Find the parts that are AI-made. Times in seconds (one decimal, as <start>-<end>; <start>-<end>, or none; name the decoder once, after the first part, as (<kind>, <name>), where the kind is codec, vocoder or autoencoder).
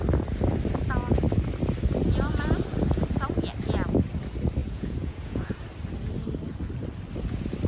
4.6-5.6 (vocoder, Vocos)